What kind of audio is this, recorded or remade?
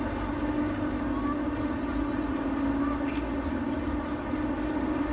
recorded